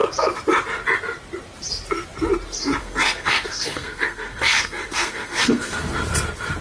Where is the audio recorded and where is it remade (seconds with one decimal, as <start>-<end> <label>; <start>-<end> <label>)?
0.0-2.8 recorded; 2.8-5.9 remade; 5.9-6.6 recorded